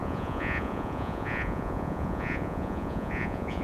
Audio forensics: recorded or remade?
remade